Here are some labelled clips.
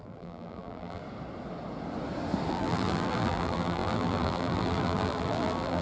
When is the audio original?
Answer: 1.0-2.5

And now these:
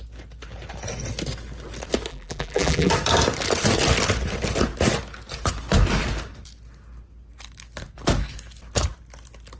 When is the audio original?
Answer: 0.0-2.1; 2.9-9.6

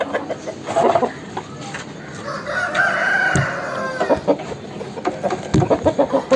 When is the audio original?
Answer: 0.0-6.4